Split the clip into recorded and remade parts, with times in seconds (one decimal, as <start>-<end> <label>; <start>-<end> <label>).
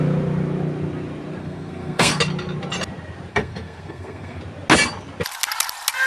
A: 0.0-1.4 recorded; 1.4-2.2 remade; 2.2-3.3 recorded; 3.3-4.4 remade; 4.4-6.1 recorded